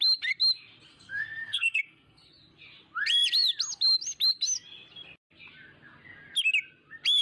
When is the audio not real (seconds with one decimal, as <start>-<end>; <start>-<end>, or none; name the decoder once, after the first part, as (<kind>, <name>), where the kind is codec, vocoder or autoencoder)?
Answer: 0.9-2.3 (codec, SNAC)